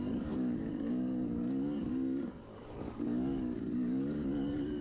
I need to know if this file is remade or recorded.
remade